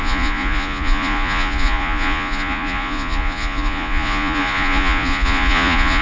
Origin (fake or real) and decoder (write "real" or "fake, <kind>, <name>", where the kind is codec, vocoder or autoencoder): fake, vocoder, Vocos